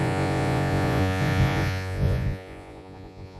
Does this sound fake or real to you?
fake